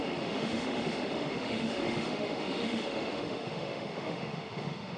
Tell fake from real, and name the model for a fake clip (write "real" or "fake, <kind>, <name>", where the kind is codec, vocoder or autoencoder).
fake, autoencoder, DAC-VAE